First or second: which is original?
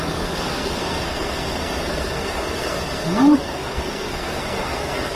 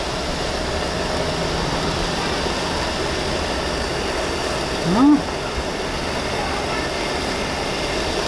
second